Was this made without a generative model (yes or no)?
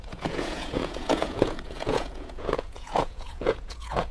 no